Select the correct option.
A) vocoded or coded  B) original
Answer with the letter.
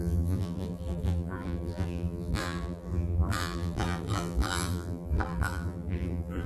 A